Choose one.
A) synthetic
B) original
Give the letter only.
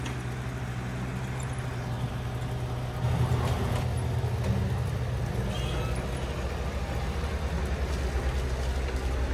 B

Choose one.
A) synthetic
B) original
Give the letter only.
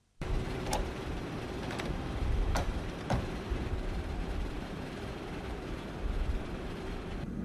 A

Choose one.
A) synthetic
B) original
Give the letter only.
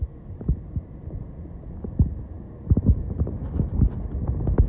B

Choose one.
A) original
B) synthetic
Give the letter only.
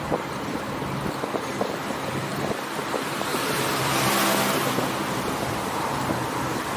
B